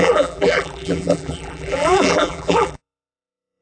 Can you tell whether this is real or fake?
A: fake